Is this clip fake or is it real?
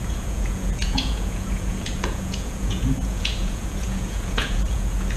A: fake